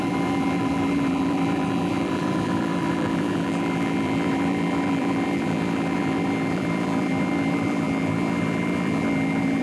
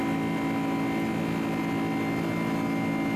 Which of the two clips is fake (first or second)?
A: first